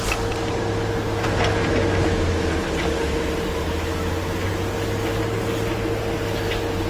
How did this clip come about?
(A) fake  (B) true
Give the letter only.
B